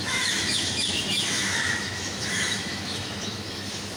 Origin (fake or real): fake